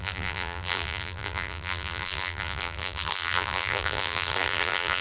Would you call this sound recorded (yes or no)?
no